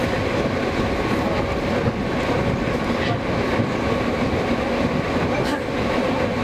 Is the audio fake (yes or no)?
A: no